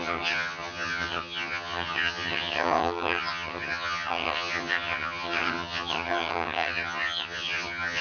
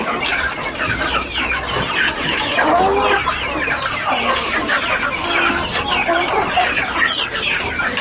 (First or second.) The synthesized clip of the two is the first